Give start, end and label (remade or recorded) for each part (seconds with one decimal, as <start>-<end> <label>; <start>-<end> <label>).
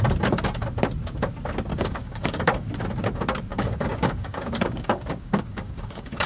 0.0-1.7 recorded; 1.7-2.7 remade; 2.7-3.5 recorded; 3.5-6.3 remade